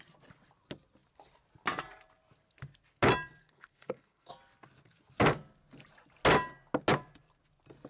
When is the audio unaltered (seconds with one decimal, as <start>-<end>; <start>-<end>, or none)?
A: 0.0-3.4; 4.3-7.9